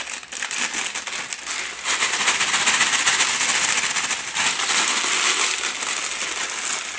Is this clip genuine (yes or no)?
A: yes